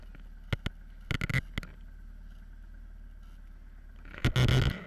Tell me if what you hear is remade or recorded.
recorded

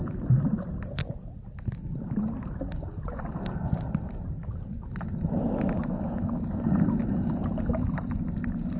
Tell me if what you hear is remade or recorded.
remade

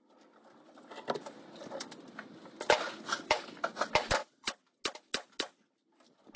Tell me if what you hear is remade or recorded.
recorded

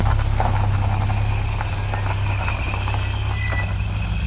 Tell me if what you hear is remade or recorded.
recorded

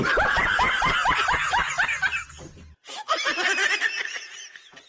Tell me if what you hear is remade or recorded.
remade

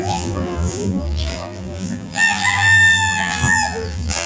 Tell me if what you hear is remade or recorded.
remade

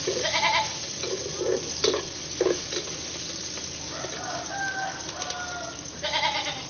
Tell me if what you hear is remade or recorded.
recorded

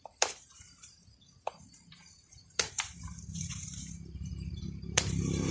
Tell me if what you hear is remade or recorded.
remade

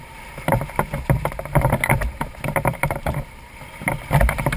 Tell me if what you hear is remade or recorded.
remade